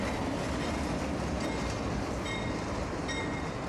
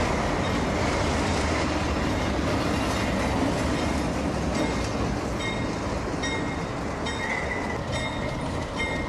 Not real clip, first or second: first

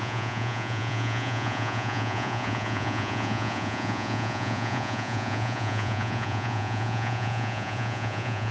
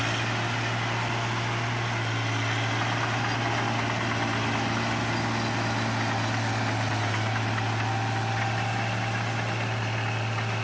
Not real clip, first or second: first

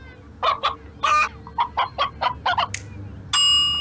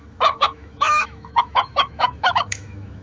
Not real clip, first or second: second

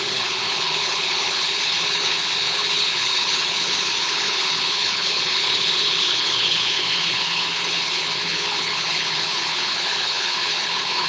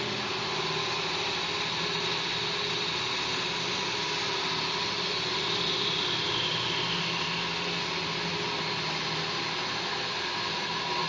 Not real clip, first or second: first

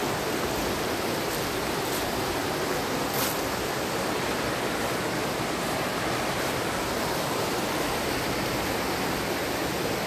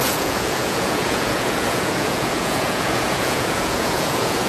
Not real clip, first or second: second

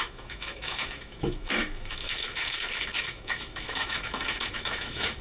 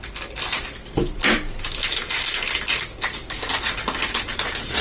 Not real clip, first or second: first